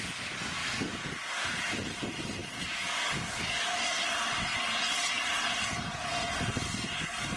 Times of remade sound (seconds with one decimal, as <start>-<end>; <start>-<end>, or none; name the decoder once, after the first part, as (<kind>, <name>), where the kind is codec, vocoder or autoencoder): 0.6-1.5 (codec, DAC); 2.4-3.6